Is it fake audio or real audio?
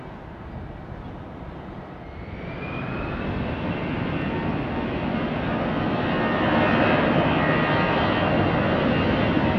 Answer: real